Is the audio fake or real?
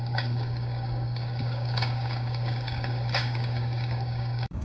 fake